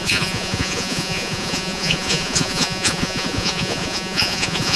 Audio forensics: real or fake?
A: fake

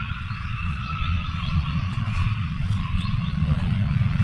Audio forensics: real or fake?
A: fake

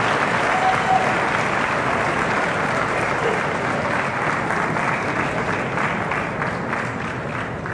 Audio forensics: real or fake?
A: real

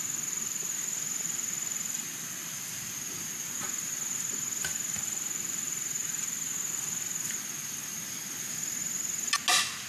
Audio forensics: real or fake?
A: real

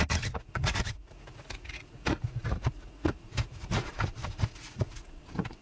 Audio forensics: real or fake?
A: fake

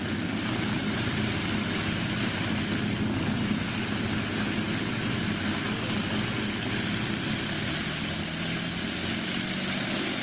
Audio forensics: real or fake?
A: real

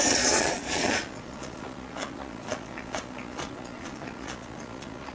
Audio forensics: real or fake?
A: fake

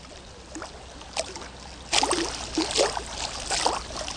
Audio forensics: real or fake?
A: real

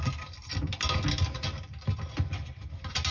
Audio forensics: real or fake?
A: real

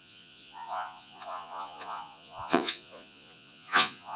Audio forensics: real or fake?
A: fake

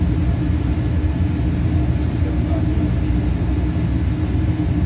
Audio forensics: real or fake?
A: real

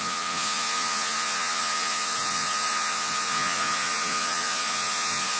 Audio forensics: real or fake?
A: fake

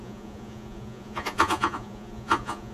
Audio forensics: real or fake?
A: fake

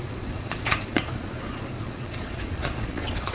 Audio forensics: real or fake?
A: fake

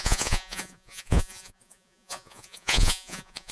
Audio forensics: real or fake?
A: fake